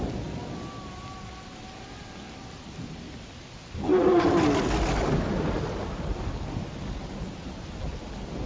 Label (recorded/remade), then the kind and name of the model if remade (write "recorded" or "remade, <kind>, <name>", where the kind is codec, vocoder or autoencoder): recorded